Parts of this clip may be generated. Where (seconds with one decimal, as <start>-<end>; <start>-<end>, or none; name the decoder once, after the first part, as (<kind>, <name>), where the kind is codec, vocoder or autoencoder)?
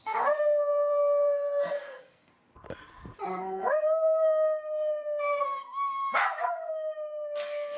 0.0-2.3 (codec, SNAC); 3.3-7.8